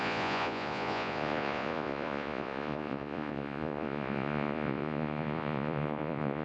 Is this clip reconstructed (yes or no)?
yes